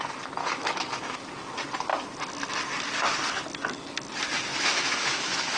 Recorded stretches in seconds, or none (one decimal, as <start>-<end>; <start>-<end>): 0.0-0.4; 1.2-4.5

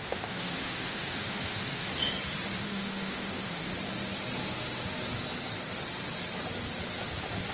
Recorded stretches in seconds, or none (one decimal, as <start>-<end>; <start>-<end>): 1.9-2.6; 3.7-7.5

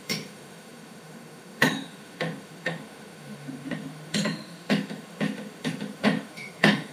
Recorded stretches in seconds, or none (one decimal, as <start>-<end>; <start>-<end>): none